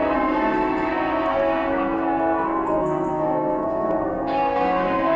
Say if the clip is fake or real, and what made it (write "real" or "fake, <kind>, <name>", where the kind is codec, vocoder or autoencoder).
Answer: fake, codec, SNAC